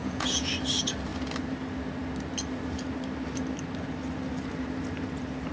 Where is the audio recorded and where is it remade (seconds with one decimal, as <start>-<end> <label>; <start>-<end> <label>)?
0.0-0.5 remade; 0.5-5.5 recorded